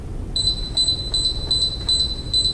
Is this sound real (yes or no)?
yes